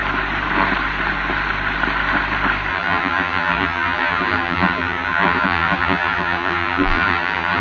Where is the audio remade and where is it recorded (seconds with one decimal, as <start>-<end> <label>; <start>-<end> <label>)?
0.0-2.7 recorded; 2.7-7.6 remade